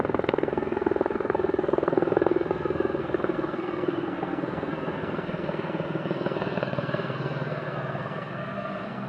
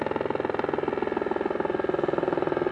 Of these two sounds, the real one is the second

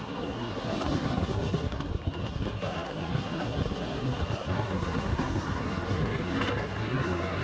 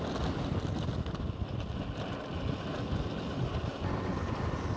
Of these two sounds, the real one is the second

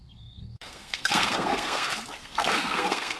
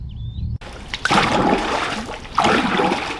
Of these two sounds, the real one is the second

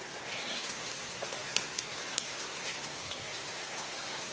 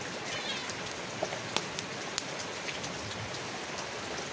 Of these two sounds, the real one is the second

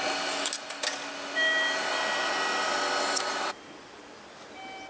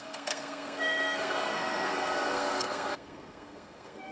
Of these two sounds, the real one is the first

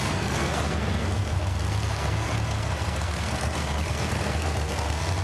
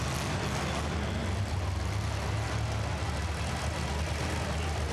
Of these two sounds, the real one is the second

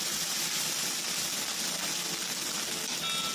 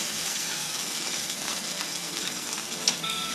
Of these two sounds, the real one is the first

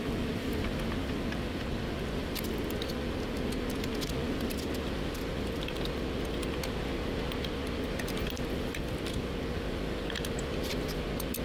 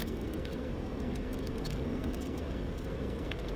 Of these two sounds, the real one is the first